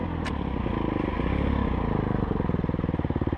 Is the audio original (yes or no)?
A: yes